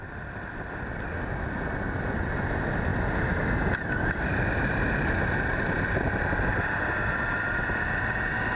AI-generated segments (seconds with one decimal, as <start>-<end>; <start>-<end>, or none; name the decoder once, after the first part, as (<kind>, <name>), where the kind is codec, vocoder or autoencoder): none